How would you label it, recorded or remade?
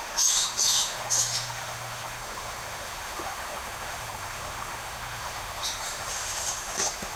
remade